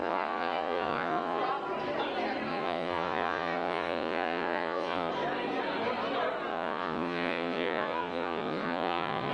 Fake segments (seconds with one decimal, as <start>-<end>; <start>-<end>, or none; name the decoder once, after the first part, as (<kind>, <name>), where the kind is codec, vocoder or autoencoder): 0.0-1.4 (vocoder, Vocos); 2.5-5.1; 6.5-9.3